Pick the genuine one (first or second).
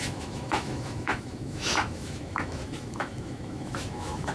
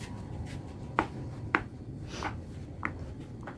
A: second